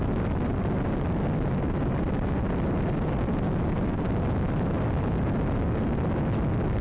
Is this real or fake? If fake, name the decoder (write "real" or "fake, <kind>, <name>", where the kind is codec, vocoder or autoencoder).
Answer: real